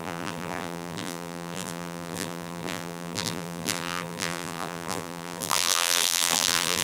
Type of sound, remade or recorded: remade